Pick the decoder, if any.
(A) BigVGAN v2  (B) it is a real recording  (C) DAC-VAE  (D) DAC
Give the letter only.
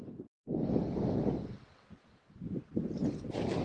B